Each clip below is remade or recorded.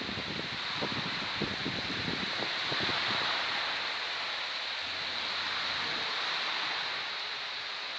recorded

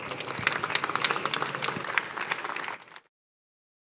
recorded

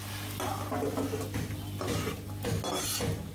recorded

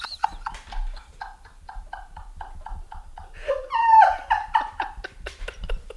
remade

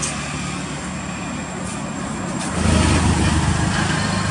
recorded